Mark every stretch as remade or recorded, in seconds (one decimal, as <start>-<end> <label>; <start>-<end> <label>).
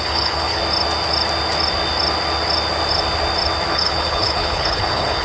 0.0-0.6 remade; 0.6-3.7 recorded; 3.7-5.2 remade